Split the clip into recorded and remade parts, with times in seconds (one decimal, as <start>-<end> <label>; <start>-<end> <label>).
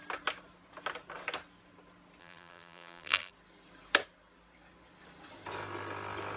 0.0-2.2 recorded; 2.2-3.3 remade; 3.3-6.4 recorded